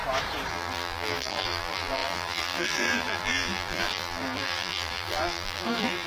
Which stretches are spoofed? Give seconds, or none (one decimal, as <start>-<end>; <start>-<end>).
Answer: 0.5-6.1